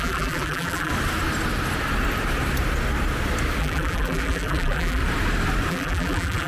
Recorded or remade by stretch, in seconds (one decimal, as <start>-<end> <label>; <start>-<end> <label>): 0.0-0.9 remade; 0.9-3.6 recorded; 3.6-5.0 remade; 5.0-5.7 recorded; 5.7-6.5 remade